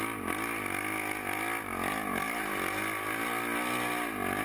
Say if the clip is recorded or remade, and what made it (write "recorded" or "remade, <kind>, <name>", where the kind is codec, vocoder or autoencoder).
recorded